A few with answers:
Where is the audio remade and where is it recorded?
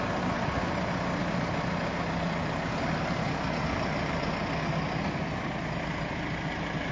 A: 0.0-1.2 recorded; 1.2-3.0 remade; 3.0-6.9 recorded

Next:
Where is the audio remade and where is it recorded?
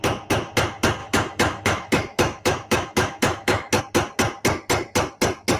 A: 0.0-1.0 recorded; 1.0-3.8 remade; 3.8-5.6 recorded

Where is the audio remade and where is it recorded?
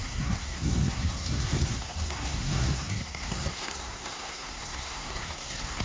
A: 0.0-5.8 remade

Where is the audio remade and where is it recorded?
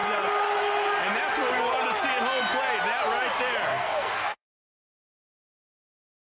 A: 0.0-3.7 recorded; 3.7-5.2 remade; 5.2-6.4 recorded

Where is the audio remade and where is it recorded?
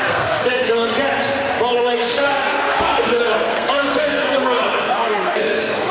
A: 0.0-0.9 remade; 0.9-1.7 recorded; 1.7-5.9 remade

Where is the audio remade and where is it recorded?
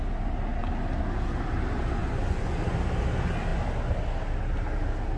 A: 0.0-2.0 recorded; 2.0-2.5 remade; 2.5-5.2 recorded